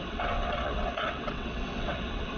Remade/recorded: remade